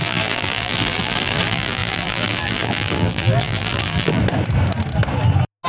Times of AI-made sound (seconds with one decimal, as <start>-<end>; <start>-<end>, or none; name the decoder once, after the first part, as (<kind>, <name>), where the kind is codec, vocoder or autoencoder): 0.0-4.2 (vocoder, BigVGAN v2)